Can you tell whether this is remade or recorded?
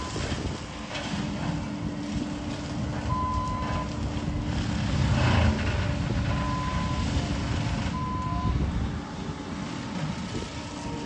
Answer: recorded